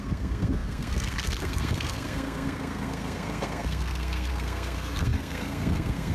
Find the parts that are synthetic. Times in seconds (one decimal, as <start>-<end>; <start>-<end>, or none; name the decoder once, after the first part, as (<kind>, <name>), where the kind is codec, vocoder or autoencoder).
0.0-6.1 (codec, SNAC)